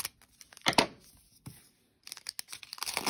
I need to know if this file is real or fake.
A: real